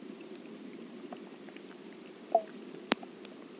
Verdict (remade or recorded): recorded